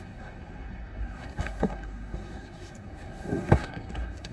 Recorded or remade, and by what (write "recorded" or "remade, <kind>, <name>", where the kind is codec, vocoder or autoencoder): remade, codec, SNAC